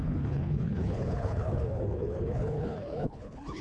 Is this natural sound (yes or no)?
no